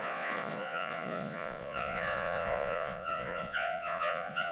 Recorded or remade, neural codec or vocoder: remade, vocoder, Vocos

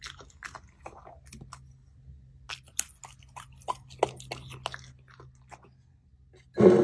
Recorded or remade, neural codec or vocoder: recorded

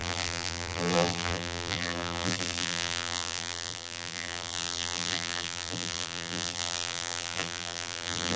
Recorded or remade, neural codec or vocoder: remade, vocoder, BigVGAN v2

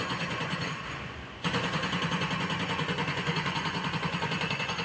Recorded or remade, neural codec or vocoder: remade, vocoder, Vocos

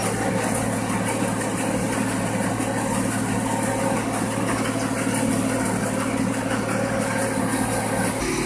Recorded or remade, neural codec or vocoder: recorded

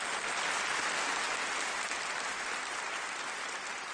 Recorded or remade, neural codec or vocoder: recorded